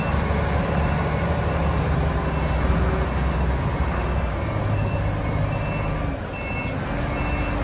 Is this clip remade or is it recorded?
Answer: recorded